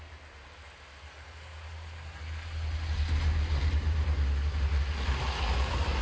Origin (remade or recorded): recorded